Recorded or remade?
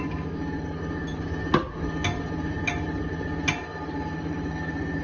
recorded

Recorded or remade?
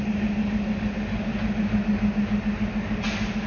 recorded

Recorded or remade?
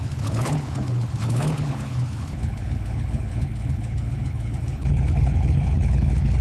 remade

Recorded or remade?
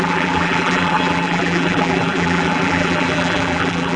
remade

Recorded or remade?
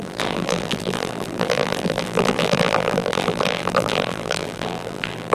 remade